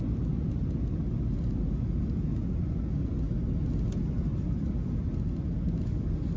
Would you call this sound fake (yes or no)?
no